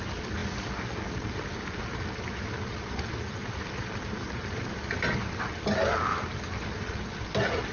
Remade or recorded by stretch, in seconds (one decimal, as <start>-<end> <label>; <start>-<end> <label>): 0.0-7.7 recorded